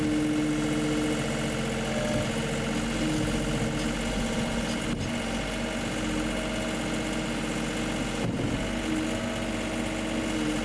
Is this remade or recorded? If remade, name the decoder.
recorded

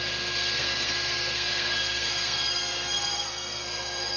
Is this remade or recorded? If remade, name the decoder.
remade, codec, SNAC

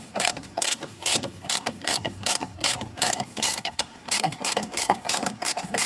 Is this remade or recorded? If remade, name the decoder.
remade, codec, SNAC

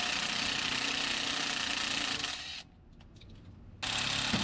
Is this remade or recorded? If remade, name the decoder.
recorded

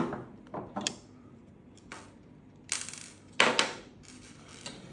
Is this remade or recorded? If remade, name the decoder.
recorded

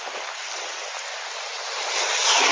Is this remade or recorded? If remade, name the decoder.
recorded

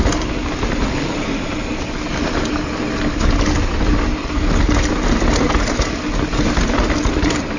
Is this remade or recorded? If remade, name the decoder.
recorded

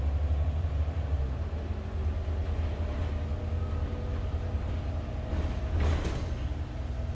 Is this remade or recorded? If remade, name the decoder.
recorded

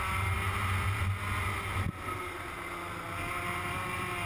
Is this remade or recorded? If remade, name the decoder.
recorded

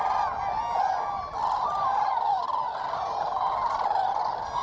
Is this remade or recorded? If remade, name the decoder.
recorded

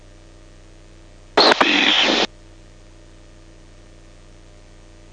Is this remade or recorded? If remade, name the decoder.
recorded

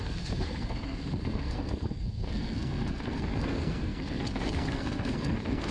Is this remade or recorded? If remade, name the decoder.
remade, codec, SNAC